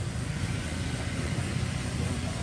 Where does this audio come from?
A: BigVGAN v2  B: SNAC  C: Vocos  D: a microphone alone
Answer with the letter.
C